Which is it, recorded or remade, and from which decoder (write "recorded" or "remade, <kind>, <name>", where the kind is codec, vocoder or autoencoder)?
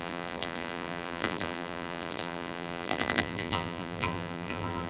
remade, vocoder, BigVGAN v2